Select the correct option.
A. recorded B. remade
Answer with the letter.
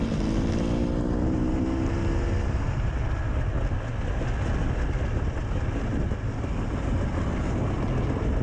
A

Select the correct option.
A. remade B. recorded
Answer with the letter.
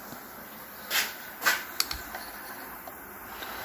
B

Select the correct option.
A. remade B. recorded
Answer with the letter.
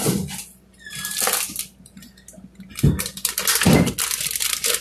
B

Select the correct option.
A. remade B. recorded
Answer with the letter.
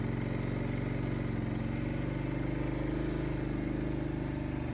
B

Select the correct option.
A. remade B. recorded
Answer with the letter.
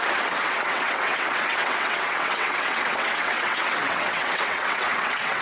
A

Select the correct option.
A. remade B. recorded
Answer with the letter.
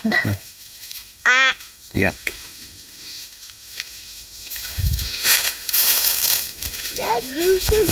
A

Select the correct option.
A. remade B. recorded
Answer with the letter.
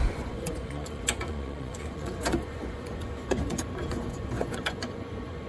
A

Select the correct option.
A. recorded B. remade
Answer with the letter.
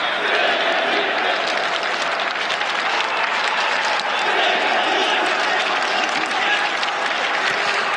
A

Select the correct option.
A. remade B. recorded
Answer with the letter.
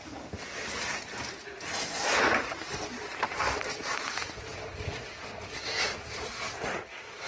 B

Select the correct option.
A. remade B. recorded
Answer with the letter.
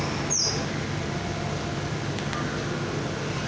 B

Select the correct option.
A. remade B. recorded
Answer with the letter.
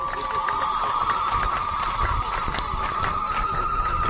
B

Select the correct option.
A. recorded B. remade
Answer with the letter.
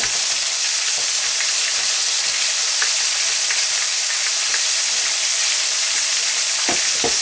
A